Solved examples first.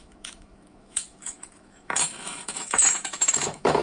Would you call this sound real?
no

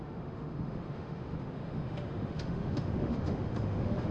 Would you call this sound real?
no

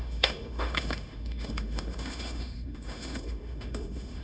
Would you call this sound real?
no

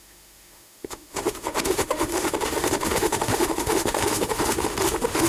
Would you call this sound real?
no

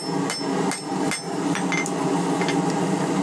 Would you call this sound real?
yes